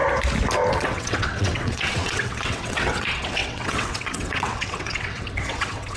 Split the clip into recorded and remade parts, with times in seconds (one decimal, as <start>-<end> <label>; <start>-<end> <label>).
0.0-0.7 recorded; 0.7-6.0 remade